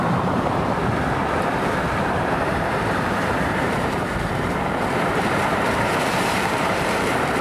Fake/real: fake